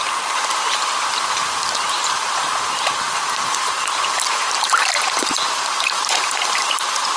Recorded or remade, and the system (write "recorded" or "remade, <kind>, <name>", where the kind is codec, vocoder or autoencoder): remade, vocoder, BigVGAN v2